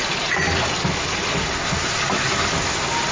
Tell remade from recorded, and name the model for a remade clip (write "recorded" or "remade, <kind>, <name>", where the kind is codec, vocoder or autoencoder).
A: recorded